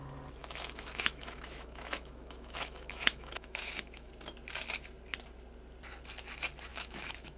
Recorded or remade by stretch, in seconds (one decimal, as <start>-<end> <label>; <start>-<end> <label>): 0.0-0.4 recorded; 0.4-4.1 remade; 4.1-6.7 recorded; 6.7-7.4 remade